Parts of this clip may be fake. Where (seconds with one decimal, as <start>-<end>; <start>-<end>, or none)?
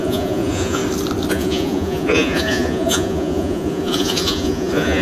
0.0-0.8; 1.3-5.0